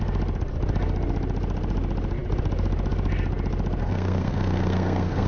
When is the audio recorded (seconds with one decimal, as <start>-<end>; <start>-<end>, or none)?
0.0-3.8